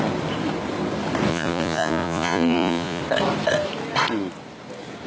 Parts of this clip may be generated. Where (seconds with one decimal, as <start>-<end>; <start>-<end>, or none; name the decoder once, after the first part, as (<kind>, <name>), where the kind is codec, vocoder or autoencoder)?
1.3-3.0 (vocoder, Vocos)